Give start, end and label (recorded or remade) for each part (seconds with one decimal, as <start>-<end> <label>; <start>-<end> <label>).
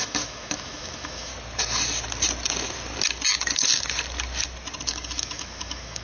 0.0-1.3 remade; 1.3-4.9 recorded; 4.9-6.0 remade